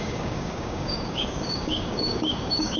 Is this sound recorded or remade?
remade